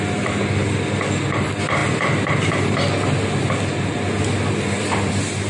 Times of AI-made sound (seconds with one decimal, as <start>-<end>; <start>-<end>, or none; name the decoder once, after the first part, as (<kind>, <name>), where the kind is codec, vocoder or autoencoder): none